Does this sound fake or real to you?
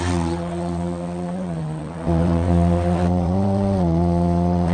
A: fake